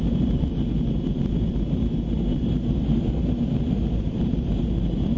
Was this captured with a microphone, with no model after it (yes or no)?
no